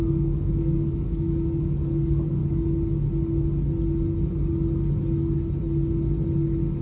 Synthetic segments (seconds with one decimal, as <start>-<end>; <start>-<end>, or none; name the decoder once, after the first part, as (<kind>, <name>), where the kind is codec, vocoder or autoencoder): 0.0-2.4 (codec, DAC)